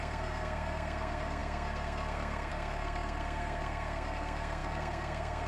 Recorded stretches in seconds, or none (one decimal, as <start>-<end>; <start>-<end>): none